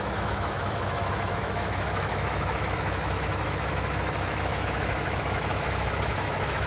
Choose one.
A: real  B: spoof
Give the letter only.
B